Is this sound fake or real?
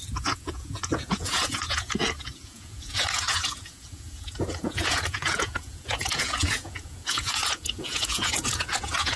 fake